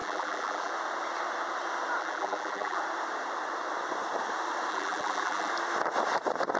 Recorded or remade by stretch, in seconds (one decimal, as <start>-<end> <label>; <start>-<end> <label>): 0.0-0.7 remade; 0.7-2.0 recorded; 2.0-2.8 remade; 2.8-4.7 recorded; 4.7-5.5 remade; 5.5-6.6 recorded